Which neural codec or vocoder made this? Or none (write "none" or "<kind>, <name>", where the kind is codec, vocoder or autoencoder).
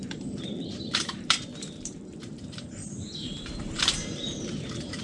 vocoder, BigVGAN v2